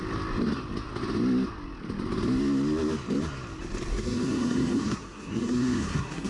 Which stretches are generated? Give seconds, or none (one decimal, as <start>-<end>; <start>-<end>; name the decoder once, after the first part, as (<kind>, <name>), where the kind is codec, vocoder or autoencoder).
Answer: 3.9-6.3 (codec, SNAC)